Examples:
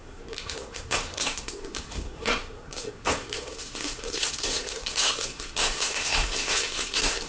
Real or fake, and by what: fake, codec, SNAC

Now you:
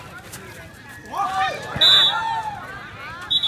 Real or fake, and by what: real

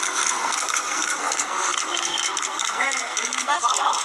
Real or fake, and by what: fake, codec, SNAC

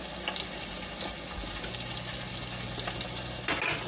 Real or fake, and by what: real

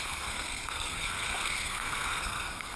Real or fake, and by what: fake, codec, SNAC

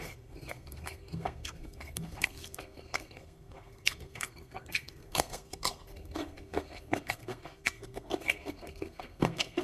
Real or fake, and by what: fake, codec, SNAC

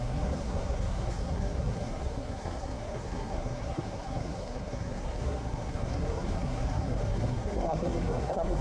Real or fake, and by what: fake, codec, SNAC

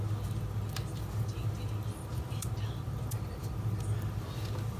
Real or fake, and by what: real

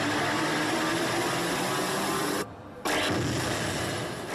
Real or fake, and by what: real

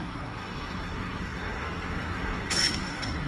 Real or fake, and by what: fake, codec, SNAC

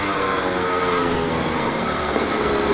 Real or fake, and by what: fake, codec, SNAC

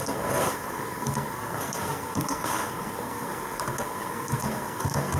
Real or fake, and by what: fake, codec, SNAC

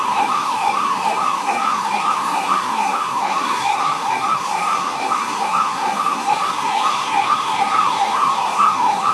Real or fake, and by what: fake, codec, SNAC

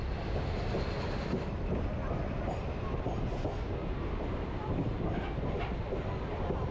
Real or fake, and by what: real